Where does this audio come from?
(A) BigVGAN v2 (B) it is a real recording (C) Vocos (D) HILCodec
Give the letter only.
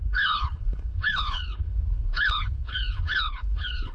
D